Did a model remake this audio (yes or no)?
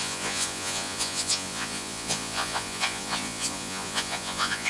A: yes